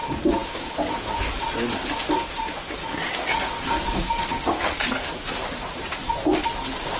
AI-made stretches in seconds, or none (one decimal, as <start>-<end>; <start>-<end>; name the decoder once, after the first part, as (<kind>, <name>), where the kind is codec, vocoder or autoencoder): 2.8-5.1 (codec, DAC)